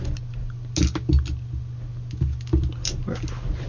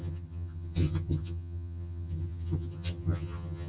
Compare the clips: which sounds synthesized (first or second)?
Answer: second